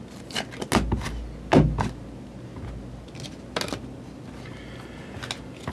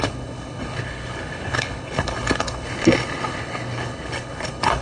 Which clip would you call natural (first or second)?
first